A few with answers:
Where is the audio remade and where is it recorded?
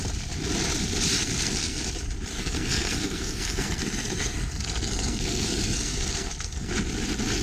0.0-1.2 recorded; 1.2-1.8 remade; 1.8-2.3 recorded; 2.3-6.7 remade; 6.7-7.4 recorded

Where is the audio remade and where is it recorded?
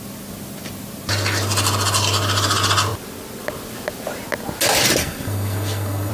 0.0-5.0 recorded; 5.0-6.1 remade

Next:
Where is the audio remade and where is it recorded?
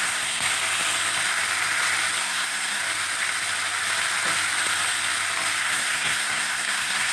0.0-0.5 remade; 0.5-2.2 recorded; 2.2-2.8 remade; 2.8-5.6 recorded; 5.6-7.1 remade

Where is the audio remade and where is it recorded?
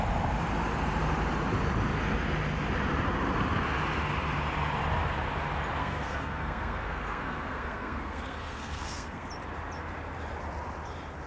0.0-5.8 recorded; 5.8-9.3 remade; 9.3-11.3 recorded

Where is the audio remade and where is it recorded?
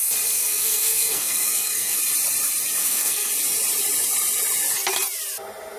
0.0-0.4 recorded; 0.4-2.0 remade; 2.0-2.8 recorded; 2.8-3.3 remade; 3.3-5.8 recorded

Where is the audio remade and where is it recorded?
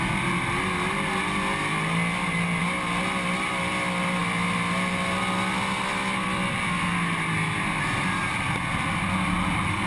0.0-9.9 recorded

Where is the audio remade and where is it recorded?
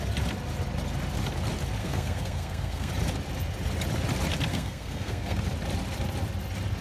0.0-1.8 recorded; 1.8-2.9 remade; 2.9-4.5 recorded; 4.5-5.4 remade; 5.4-6.8 recorded